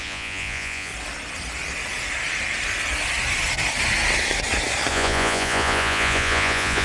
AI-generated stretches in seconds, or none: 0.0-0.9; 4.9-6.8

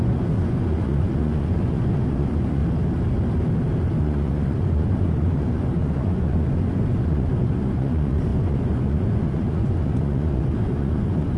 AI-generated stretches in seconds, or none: 0.0-2.6; 4.0-11.4